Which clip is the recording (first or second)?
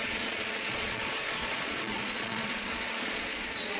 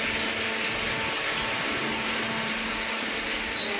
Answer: second